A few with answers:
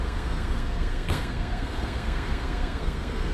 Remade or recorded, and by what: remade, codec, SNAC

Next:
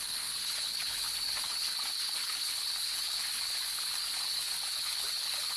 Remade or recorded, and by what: remade, codec, HILCodec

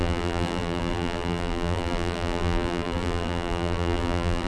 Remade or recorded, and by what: remade, vocoder, BigVGAN v2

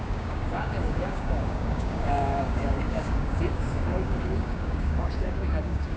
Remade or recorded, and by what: remade, codec, DAC